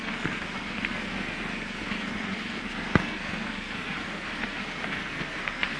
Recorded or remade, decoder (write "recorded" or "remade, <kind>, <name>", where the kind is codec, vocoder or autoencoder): remade, codec, SNAC